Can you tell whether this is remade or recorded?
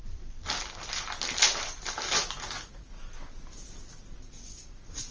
recorded